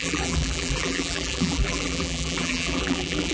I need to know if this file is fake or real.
fake